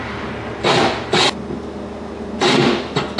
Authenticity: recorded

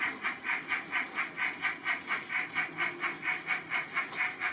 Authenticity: recorded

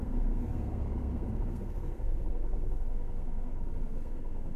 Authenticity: remade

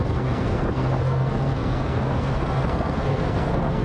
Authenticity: remade